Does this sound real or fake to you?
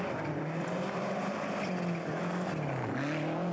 real